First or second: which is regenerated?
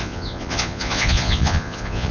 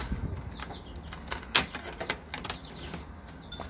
first